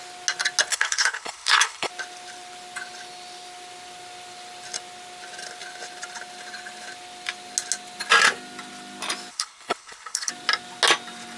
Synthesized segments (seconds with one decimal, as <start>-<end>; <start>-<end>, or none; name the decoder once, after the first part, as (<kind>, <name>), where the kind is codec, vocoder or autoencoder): 0.7-1.9 (codec, HILCodec); 9.3-10.3